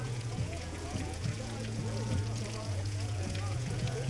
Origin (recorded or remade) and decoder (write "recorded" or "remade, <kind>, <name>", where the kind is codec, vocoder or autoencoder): remade, vocoder, Vocos